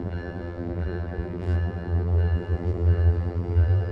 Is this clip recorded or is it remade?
remade